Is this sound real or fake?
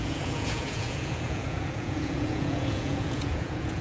fake